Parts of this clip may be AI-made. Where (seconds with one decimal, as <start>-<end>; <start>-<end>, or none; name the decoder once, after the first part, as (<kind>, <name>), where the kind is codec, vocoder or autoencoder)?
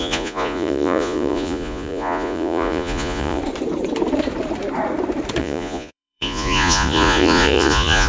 0.0-3.4 (vocoder, Vocos); 5.4-8.1